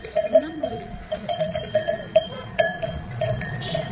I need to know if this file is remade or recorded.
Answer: remade